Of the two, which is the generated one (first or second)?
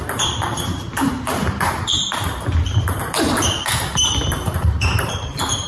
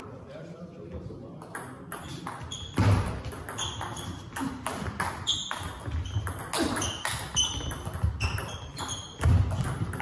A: first